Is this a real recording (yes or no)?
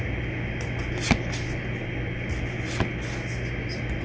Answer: yes